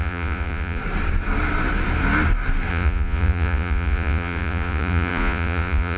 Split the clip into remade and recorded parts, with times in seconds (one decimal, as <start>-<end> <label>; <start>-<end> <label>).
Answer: 0.0-0.8 remade; 0.8-2.7 recorded; 2.7-6.0 remade